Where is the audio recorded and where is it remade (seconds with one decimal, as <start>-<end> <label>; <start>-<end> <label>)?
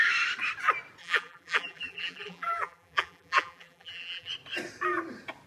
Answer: 0.0-1.0 recorded; 1.0-4.3 remade; 4.3-5.5 recorded